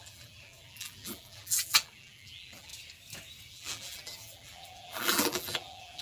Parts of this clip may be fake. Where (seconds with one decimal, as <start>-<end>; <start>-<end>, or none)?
0.0-2.7; 3.5-6.0